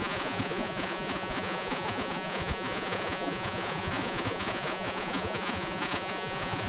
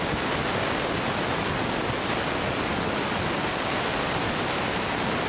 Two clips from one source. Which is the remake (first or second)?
first